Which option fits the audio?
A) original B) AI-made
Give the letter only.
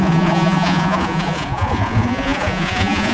B